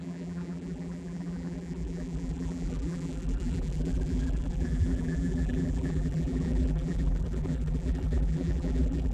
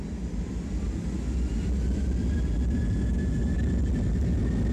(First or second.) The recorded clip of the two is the second